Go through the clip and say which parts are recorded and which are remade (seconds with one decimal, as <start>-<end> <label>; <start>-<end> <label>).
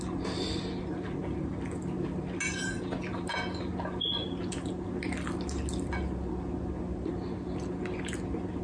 0.0-8.6 recorded